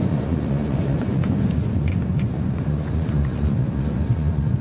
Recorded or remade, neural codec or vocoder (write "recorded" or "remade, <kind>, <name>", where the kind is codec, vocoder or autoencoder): remade, vocoder, Vocos